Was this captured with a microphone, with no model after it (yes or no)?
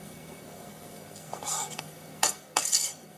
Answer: no